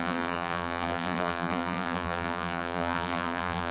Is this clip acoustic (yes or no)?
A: no